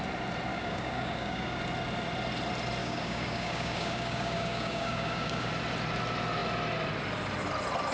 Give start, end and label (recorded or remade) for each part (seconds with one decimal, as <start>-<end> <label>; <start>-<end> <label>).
0.0-0.5 recorded; 0.5-1.6 remade; 1.6-2.8 recorded; 2.8-5.5 remade; 5.5-7.9 recorded